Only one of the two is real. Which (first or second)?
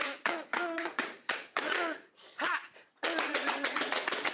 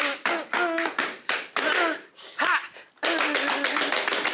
second